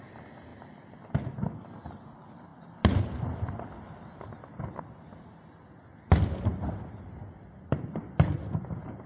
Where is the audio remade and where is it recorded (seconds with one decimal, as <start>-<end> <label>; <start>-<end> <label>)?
0.0-9.1 recorded